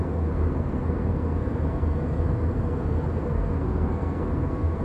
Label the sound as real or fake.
fake